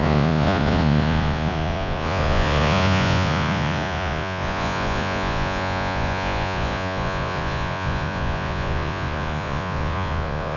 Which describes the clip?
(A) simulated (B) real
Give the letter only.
A